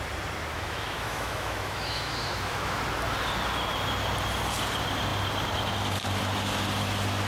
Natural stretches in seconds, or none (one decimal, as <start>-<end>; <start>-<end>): 0.0-0.5; 2.8-7.3